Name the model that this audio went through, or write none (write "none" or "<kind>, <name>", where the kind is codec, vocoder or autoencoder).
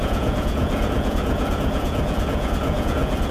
vocoder, Vocos